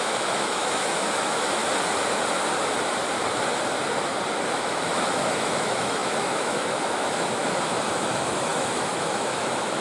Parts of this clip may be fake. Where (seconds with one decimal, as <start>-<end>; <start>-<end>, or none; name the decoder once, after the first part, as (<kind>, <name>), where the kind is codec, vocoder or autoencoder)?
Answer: 0.0-1.6 (autoencoder, DAC-VAE); 4.5-9.8